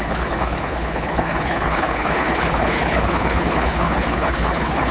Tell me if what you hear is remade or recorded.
remade